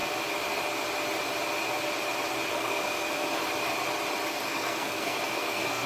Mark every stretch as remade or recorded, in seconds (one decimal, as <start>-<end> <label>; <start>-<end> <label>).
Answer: 0.0-2.5 recorded; 2.5-3.4 remade; 3.4-4.3 recorded; 4.3-5.9 remade

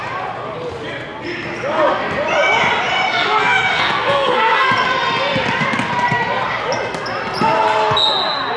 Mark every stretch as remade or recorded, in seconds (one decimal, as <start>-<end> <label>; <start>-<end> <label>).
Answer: 0.0-3.1 recorded; 3.1-4.7 remade; 4.7-8.6 recorded

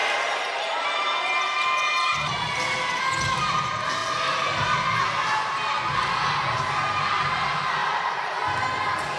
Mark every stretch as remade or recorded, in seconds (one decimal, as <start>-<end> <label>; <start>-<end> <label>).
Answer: 0.0-9.2 recorded